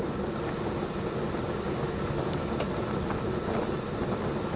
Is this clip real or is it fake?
real